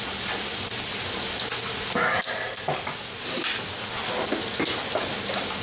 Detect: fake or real real